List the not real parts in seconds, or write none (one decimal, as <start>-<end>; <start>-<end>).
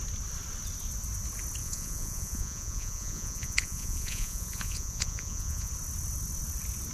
1.6-5.7